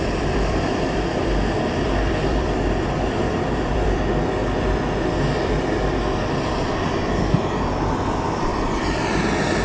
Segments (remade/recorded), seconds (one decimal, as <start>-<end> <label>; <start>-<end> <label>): 0.0-8.5 remade; 8.5-9.1 recorded; 9.1-9.6 remade